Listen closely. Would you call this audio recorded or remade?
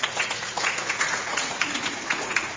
remade